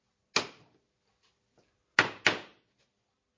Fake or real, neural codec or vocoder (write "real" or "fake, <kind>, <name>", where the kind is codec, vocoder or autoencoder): real